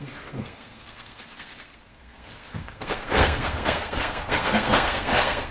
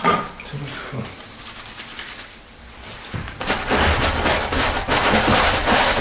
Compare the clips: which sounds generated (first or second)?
first